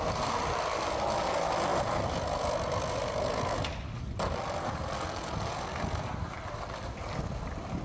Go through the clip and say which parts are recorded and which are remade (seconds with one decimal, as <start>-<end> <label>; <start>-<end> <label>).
0.0-7.8 recorded